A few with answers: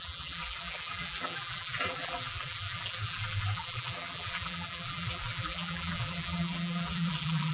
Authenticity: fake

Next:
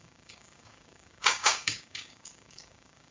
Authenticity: fake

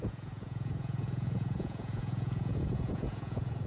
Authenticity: fake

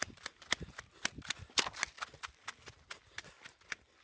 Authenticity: real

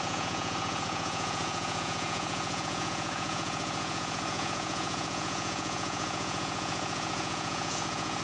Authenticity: fake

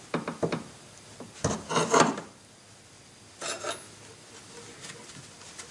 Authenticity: real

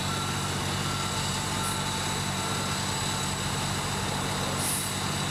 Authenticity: real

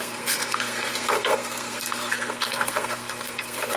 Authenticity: fake